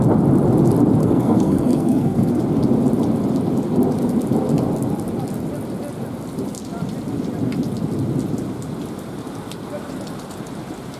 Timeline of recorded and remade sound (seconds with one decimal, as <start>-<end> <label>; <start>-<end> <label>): 0.0-1.0 recorded; 1.0-2.4 remade; 2.4-11.0 recorded